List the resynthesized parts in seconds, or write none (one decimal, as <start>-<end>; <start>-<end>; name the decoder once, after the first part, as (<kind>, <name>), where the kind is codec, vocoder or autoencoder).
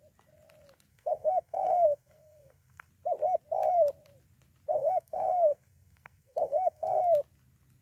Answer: 0.9-2.9 (codec, SNAC); 4.7-7.0